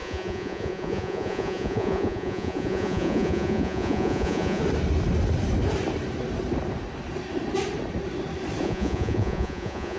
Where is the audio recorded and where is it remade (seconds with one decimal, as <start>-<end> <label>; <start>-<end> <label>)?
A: 0.0-4.6 remade; 4.6-8.6 recorded; 8.6-10.0 remade